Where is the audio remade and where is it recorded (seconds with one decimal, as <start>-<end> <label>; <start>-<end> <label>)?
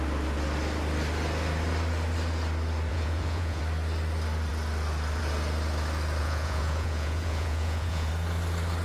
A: 0.0-2.9 recorded; 2.9-3.6 remade; 3.6-6.2 recorded; 6.2-8.1 remade; 8.1-8.8 recorded